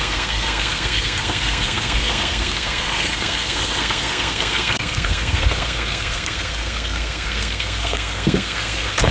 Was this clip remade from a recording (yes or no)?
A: yes